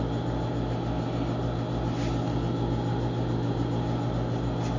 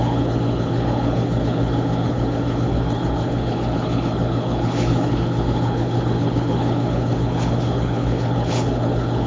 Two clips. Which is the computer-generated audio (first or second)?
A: second